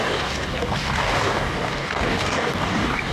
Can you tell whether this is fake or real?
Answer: fake